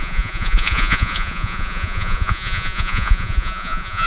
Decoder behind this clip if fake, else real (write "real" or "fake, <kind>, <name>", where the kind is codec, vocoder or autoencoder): fake, vocoder, Vocos